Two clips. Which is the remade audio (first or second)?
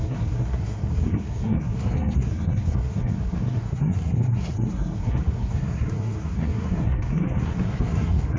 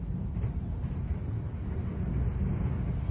first